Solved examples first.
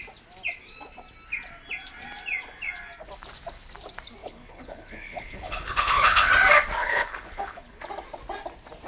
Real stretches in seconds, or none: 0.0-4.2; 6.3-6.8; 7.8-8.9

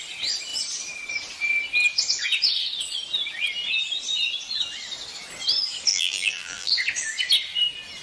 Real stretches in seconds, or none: 0.0-5.9; 6.7-8.0

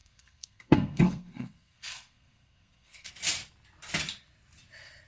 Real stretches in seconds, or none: 3.1-5.1

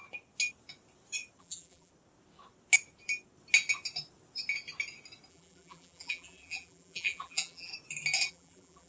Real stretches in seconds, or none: 0.0-1.4; 1.9-5.3; 7.7-8.3

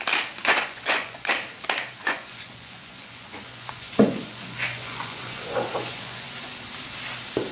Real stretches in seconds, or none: 0.0-0.4; 1.3-2.0; 6.5-7.5

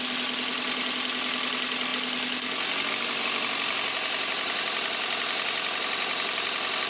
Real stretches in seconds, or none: 0.0-6.9

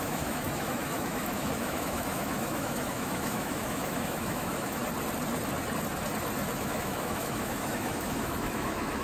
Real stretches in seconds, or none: 4.8-6.6